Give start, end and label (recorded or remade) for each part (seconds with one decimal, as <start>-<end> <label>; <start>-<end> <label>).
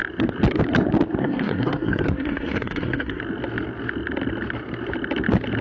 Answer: 0.0-1.2 recorded; 1.2-3.2 remade; 3.2-5.6 recorded